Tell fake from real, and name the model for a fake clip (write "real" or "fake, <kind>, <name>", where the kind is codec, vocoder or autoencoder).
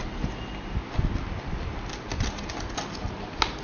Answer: real